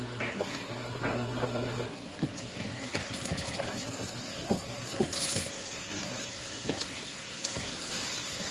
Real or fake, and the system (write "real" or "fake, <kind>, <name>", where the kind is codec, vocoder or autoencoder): fake, codec, SNAC